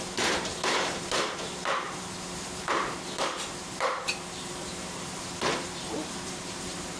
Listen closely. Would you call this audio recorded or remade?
remade